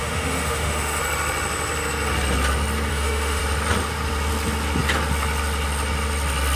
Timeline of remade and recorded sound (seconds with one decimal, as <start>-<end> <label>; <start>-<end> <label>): 0.0-1.0 remade; 1.0-2.9 recorded; 2.9-3.4 remade; 3.4-6.6 recorded